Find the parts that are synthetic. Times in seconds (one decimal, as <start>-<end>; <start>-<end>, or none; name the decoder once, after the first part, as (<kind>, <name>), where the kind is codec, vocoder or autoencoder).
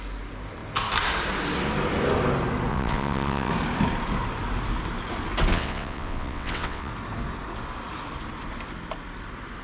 2.7-3.5 (vocoder, WaveNeXt); 5.5-6.9